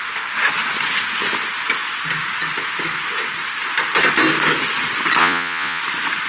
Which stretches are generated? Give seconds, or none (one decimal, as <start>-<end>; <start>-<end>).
5.2-5.8